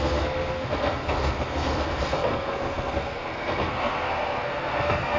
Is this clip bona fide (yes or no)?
no